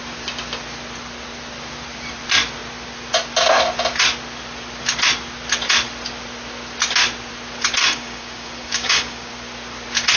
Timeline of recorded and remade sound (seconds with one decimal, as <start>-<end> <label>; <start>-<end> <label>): 0.0-7.8 recorded; 7.8-9.3 remade; 9.3-10.2 recorded

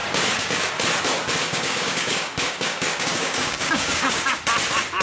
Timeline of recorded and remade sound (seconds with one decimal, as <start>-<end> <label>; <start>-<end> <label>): 0.0-0.7 remade; 0.7-1.4 recorded; 1.4-4.4 remade; 4.4-5.0 recorded

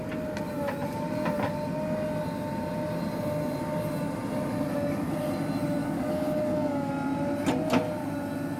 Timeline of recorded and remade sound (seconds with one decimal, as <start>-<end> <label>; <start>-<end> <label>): 0.0-5.8 recorded; 5.8-6.9 remade; 6.9-8.6 recorded

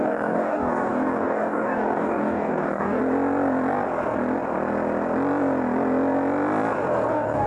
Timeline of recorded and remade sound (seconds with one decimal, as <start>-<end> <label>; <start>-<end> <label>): 0.0-3.0 remade; 3.0-7.1 recorded; 7.1-7.5 remade

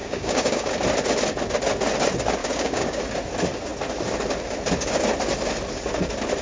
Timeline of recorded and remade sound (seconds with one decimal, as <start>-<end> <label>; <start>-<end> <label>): 0.0-0.7 remade; 0.7-2.4 recorded; 2.4-3.0 remade; 3.0-6.4 recorded